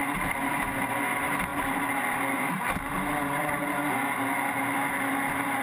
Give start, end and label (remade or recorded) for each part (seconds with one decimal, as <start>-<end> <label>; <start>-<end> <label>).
0.0-5.6 recorded